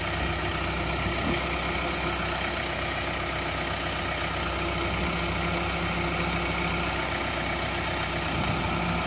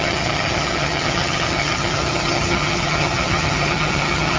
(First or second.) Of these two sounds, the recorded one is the first